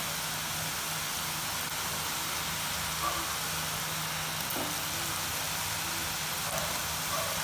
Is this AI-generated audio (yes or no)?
no